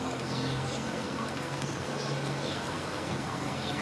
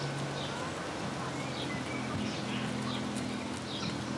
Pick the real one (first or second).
second